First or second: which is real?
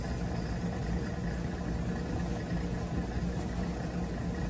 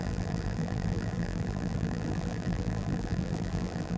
first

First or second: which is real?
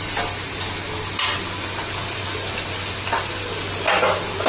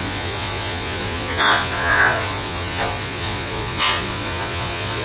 first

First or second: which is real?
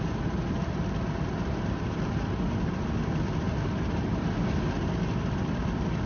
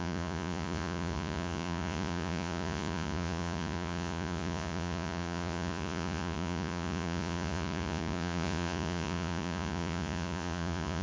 first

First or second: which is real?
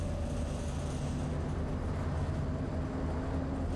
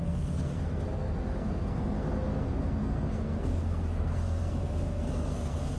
first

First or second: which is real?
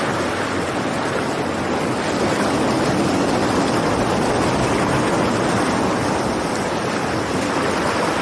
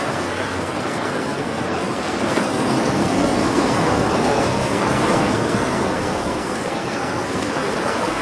first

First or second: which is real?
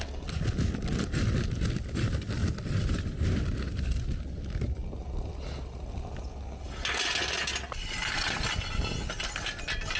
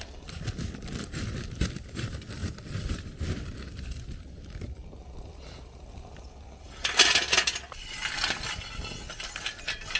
first